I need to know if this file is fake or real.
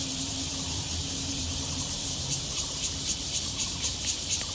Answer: fake